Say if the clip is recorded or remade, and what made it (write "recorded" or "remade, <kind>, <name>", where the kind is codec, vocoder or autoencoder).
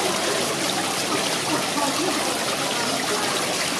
recorded